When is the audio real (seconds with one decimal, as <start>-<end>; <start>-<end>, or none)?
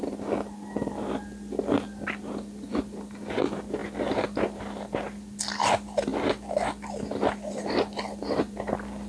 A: 0.0-9.1